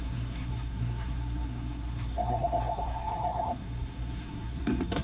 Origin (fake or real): fake